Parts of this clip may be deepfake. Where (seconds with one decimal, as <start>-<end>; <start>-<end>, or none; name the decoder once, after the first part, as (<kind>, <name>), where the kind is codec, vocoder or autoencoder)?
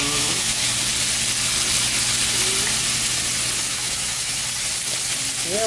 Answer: 0.0-0.6 (autoencoder, DAC-VAE); 3.7-4.4